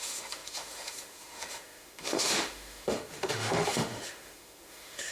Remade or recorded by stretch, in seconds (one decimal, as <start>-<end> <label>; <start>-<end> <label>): 0.0-5.1 remade